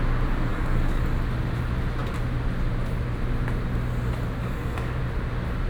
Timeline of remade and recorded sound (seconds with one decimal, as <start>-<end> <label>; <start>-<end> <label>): 0.0-0.5 recorded; 0.5-1.0 remade; 1.0-4.4 recorded; 4.4-5.0 remade; 5.0-5.7 recorded